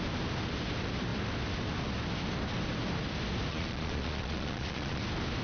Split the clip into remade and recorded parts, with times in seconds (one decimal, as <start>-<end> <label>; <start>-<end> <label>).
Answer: 0.0-3.5 recorded; 3.5-5.0 remade; 5.0-5.4 recorded